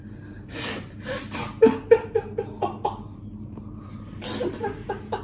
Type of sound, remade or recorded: recorded